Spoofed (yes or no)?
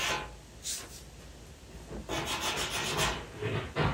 no